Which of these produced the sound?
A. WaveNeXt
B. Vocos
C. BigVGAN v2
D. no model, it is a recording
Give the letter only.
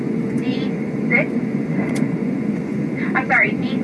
B